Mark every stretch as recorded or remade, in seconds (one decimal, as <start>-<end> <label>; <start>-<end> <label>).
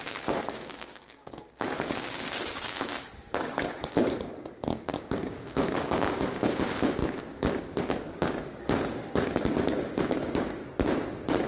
0.0-10.6 remade; 10.6-11.5 recorded